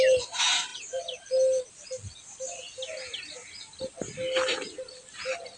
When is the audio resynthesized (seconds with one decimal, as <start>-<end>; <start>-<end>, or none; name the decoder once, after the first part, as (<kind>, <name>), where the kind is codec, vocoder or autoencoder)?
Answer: none